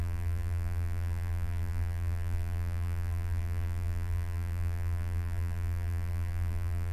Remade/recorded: remade